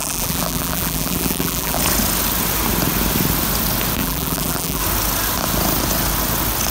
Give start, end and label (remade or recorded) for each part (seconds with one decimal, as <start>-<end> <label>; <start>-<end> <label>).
0.0-1.8 remade; 1.8-4.0 recorded; 4.0-4.8 remade; 4.8-6.7 recorded